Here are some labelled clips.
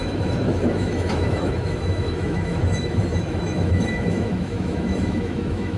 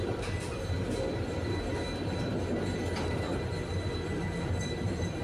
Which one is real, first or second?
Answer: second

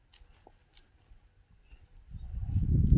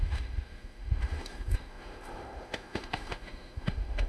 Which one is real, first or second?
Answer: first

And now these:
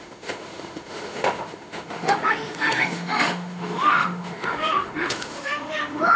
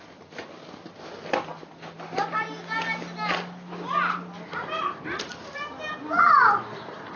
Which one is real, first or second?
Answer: second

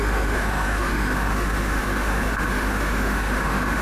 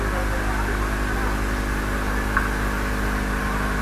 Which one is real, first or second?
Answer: second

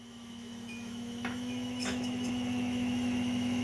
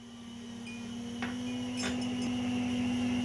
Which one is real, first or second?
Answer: second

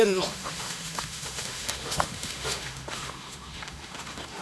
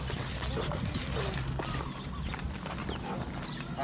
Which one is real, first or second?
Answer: second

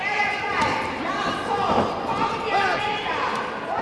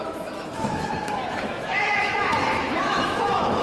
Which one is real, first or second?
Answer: first